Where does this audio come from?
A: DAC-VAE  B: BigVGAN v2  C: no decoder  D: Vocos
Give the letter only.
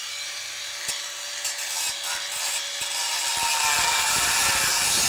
C